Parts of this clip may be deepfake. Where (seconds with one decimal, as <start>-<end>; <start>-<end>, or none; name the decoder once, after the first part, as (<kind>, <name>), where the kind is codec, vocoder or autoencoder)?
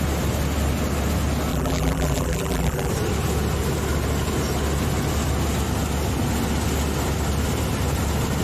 1.5-2.9 (vocoder, BigVGAN v2)